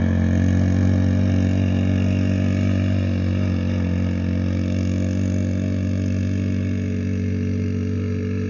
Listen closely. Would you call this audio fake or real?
real